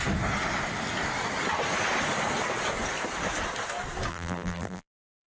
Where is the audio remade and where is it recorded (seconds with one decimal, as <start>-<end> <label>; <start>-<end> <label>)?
0.0-4.1 recorded; 4.1-5.3 remade